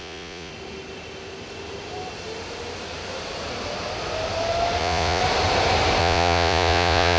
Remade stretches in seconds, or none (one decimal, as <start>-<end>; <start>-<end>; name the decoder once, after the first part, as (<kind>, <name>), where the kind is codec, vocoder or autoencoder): 0.0-0.5 (vocoder, Vocos); 4.8-5.2; 6.0-7.2